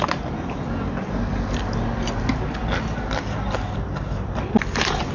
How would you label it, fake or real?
real